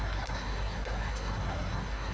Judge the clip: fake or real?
fake